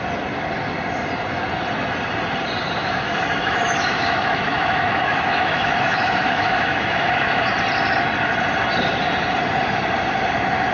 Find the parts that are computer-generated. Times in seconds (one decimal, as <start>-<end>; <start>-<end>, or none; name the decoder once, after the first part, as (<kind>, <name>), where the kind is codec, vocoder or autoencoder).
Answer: 2.8-7.4 (autoencoder, DAC-VAE)